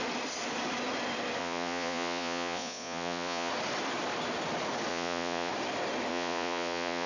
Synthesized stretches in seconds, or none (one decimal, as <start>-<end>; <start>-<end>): 1.4-3.5; 4.9-5.5; 6.1-7.1